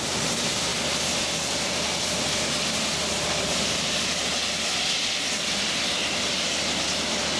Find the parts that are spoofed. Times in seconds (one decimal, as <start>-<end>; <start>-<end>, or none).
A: none